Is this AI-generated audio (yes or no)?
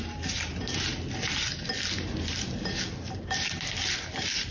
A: no